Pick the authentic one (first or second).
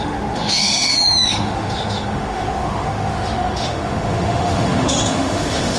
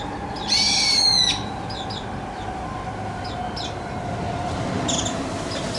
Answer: second